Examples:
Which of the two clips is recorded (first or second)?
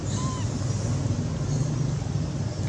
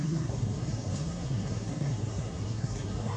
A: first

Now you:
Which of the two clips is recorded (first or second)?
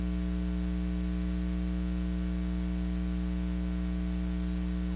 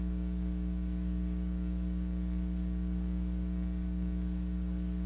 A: first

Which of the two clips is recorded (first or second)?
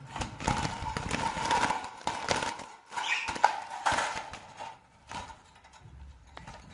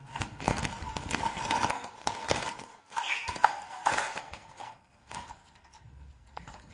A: first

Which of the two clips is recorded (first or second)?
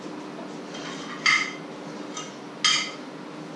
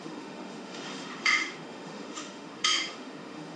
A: first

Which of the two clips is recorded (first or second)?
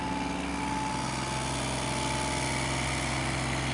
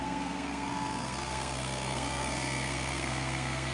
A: first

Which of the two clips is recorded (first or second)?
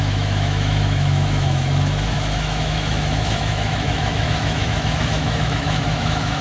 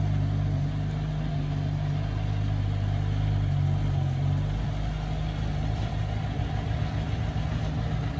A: second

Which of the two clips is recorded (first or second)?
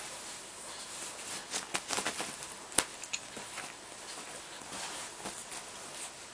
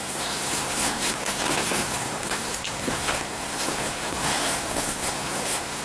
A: first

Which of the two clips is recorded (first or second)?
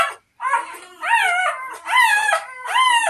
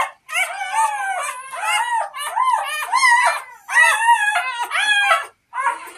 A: second